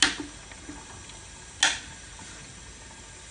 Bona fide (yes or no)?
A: yes